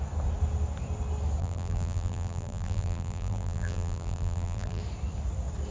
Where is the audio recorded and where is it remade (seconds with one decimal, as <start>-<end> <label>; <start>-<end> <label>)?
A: 0.0-1.4 recorded; 1.4-4.8 remade; 4.8-5.7 recorded